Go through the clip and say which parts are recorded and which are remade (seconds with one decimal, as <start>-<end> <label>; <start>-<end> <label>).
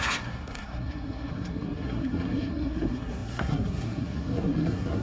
0.0-5.0 remade